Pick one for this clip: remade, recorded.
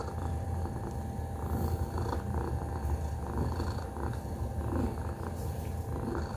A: recorded